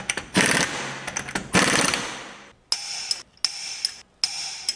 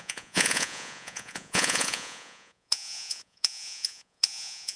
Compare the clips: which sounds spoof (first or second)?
second